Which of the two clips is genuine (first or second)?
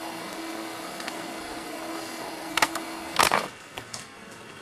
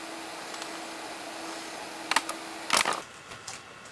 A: second